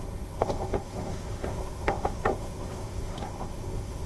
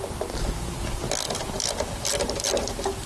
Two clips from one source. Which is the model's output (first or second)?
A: first